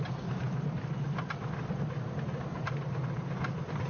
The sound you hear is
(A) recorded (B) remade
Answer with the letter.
A